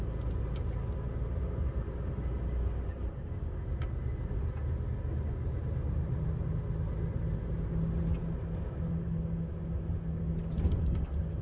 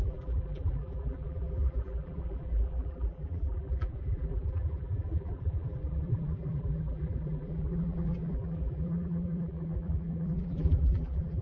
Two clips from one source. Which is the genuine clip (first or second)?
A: first